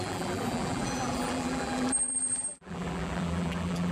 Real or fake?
fake